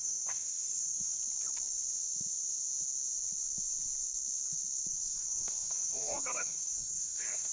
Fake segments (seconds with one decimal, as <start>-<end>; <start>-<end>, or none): 0.0-1.2; 4.9-7.5